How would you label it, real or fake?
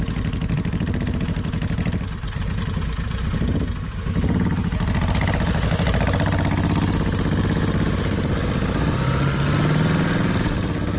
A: real